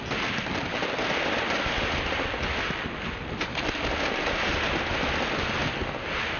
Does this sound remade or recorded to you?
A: recorded